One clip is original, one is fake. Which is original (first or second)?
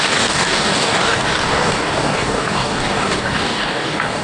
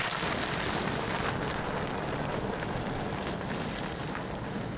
second